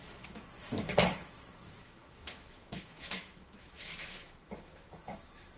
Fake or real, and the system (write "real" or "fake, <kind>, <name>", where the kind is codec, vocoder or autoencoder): fake, autoencoder, DAC-VAE